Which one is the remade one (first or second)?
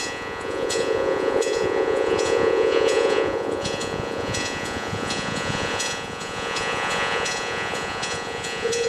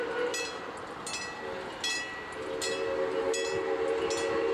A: first